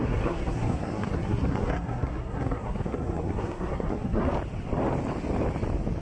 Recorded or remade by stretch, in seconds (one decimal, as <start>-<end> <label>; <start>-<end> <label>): 0.0-4.3 remade; 4.3-6.0 recorded